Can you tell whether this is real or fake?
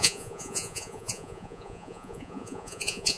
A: fake